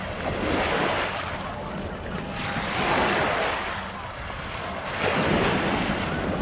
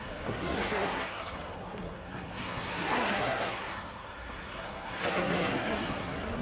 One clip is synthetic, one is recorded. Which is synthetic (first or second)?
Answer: second